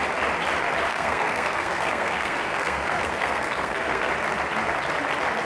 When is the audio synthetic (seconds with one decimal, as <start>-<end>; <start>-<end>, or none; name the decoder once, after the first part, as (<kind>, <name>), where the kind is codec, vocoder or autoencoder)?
0.9-4.1 (codec, SNAC)